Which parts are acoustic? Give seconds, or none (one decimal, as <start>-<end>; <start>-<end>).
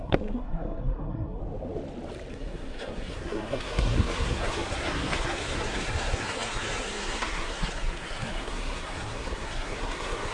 1.4-2.3